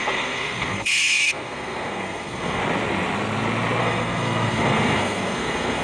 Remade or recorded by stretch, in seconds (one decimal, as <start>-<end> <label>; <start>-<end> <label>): 0.0-2.6 remade; 2.6-3.8 recorded; 3.8-5.8 remade